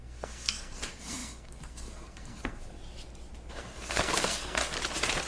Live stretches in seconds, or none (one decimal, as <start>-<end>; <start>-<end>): 2.8-3.5; 4.6-5.3

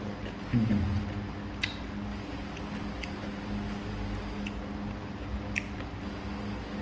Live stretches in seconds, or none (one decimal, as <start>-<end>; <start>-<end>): 0.0-6.8